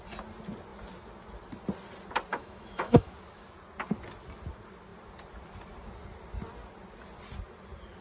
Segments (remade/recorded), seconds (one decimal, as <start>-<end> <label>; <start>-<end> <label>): 0.0-2.3 recorded; 2.3-3.1 remade; 3.1-8.0 recorded